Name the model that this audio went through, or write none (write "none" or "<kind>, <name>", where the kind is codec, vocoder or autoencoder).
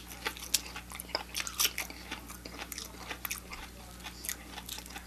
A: none